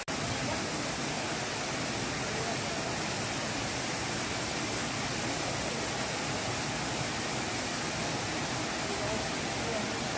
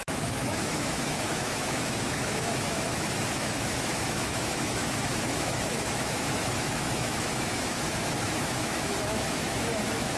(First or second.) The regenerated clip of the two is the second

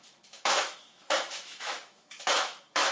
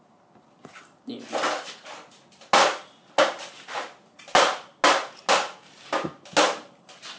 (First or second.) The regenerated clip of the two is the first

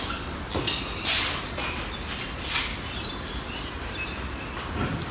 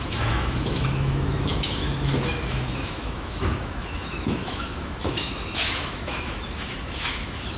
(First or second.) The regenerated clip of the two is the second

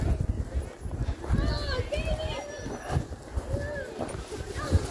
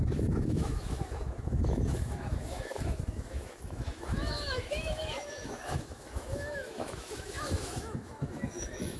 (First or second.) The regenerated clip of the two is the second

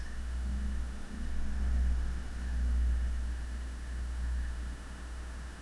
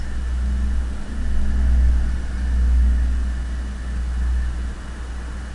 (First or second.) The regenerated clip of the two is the first